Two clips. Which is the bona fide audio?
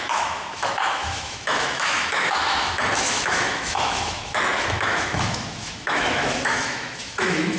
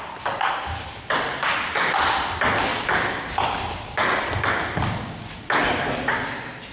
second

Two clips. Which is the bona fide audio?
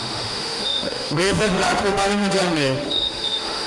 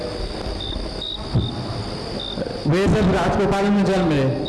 second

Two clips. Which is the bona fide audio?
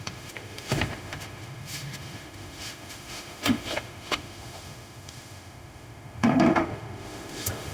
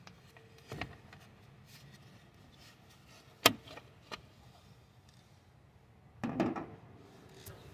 second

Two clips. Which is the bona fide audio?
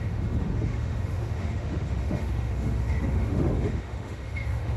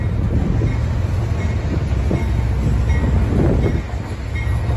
second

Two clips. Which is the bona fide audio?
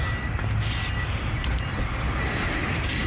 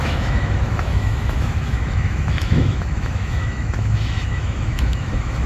first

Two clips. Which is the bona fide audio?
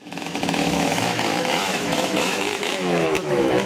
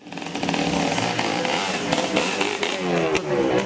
second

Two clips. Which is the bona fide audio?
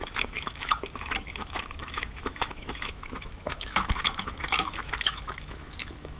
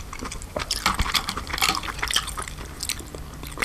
second